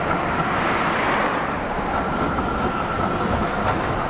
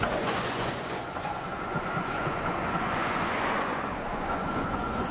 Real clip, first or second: first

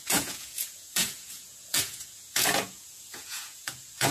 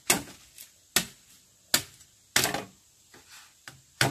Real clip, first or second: second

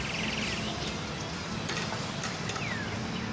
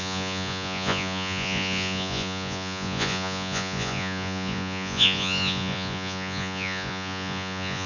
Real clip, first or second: first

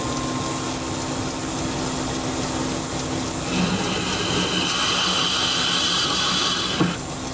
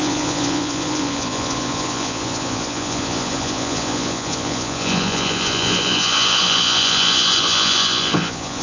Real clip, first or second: first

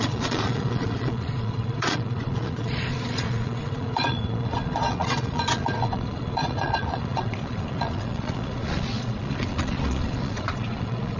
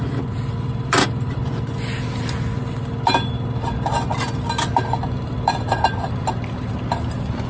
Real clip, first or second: second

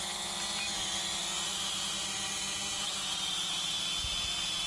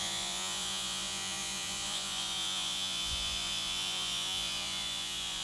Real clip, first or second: first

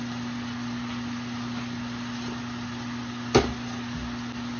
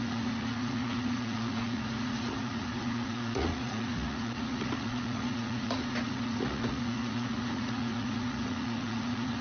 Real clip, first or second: first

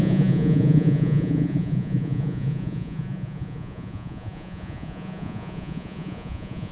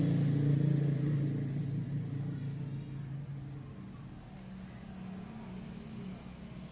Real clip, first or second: second